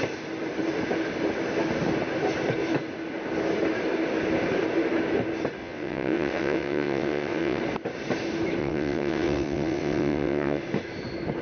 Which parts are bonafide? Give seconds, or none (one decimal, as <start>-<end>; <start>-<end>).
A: 0.0-5.6; 7.6-8.6; 10.6-11.4